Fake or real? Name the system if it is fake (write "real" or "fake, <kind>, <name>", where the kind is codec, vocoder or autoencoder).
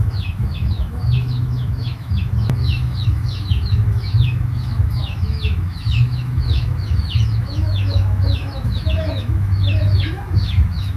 fake, autoencoder, DAC-VAE